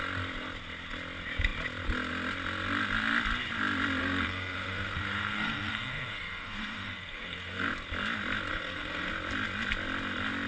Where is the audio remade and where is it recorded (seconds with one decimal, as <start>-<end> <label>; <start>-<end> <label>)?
0.0-4.0 recorded; 4.0-7.7 remade; 7.7-8.5 recorded; 8.5-9.1 remade; 9.1-10.5 recorded